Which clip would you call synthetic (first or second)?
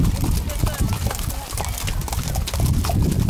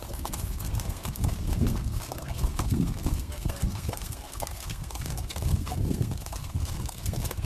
second